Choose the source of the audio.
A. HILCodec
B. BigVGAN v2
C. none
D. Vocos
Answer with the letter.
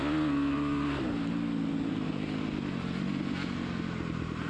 C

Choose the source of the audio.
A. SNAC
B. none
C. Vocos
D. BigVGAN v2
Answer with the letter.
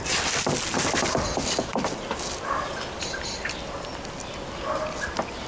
B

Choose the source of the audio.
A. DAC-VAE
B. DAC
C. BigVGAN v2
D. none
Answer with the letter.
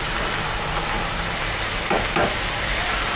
D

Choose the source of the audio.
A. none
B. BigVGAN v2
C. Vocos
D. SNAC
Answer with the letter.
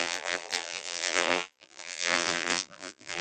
B